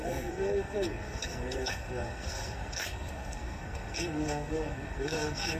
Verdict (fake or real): fake